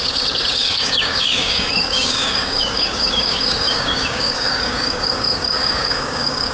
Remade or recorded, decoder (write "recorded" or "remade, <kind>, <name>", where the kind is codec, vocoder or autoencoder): remade, codec, DAC